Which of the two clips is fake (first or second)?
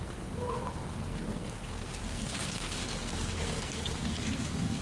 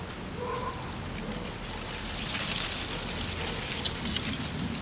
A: first